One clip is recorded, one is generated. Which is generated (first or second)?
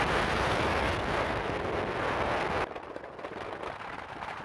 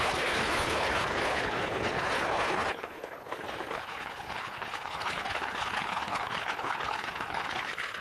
second